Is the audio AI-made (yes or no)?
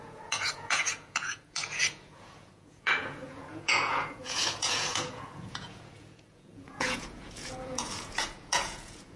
yes